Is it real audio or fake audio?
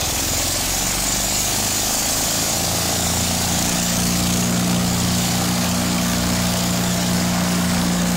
fake